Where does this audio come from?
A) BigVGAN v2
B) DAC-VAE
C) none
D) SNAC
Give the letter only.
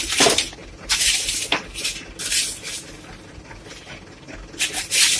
C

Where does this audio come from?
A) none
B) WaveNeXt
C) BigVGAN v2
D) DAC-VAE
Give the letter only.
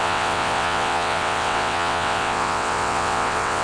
B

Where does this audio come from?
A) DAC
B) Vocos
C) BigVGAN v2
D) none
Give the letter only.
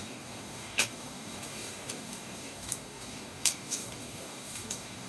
A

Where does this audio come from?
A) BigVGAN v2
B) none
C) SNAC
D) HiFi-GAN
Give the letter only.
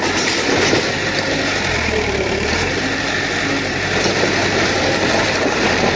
A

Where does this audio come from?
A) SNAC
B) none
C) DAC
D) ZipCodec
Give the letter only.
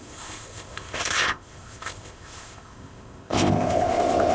D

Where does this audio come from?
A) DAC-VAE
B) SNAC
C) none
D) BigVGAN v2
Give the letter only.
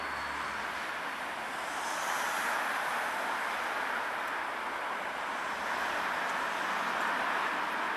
C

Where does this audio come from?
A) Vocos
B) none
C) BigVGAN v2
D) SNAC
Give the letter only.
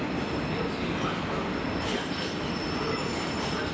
B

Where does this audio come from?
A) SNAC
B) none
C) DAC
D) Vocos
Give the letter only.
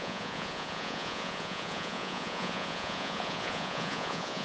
D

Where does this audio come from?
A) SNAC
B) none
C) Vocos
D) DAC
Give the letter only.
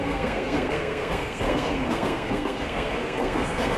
A